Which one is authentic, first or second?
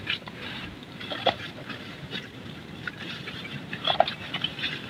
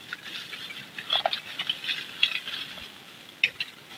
second